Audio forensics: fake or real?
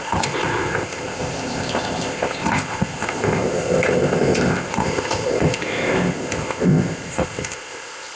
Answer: fake